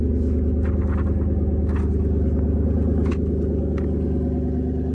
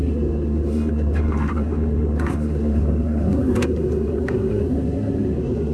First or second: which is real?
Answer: first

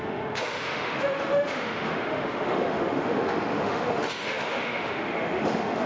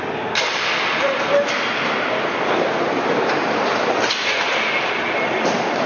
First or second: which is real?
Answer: second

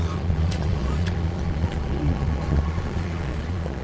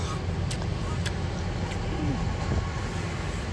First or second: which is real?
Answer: second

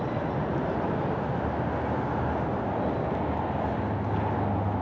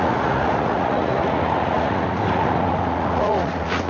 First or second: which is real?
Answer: first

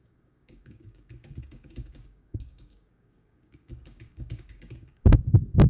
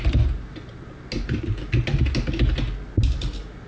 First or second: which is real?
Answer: second